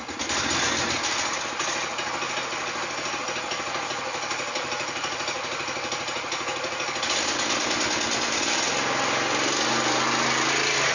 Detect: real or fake real